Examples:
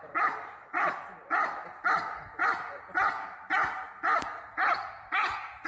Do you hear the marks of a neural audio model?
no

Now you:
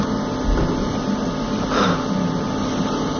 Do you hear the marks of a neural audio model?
no